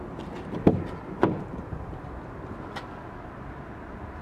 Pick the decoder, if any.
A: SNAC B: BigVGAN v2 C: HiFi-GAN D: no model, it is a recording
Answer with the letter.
D